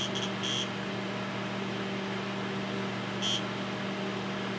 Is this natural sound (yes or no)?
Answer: yes